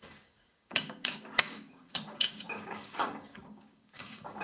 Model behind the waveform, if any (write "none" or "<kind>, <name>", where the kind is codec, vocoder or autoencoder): codec, DAC